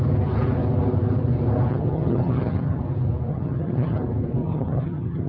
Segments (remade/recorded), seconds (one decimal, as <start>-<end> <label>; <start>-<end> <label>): 0.0-1.7 recorded; 1.7-2.8 remade; 2.8-3.3 recorded; 3.3-4.0 remade; 4.0-4.4 recorded; 4.4-5.3 remade